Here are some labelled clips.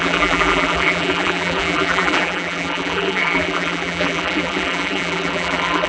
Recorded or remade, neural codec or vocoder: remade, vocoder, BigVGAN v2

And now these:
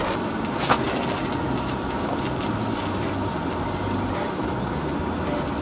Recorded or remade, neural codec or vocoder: recorded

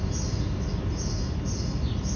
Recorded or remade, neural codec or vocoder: recorded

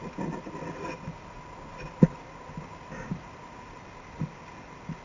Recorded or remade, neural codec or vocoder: recorded